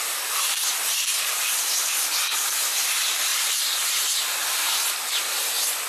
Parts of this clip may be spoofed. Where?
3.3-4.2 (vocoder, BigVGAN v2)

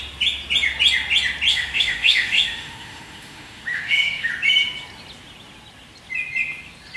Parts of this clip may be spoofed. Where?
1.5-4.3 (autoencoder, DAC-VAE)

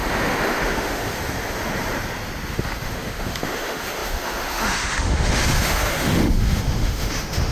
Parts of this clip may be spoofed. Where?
0.0-1.2 (autoencoder, DAC-VAE); 2.5-7.5

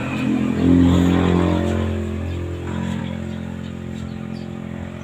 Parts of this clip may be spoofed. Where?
none

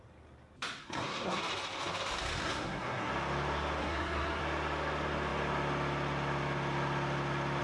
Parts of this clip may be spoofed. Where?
0.8-1.4 (codec, SNAC); 2.4-3.1; 3.8-4.4